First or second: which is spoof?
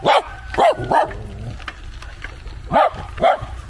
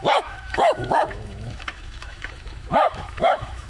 second